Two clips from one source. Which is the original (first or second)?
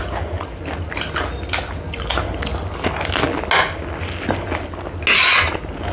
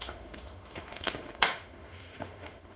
first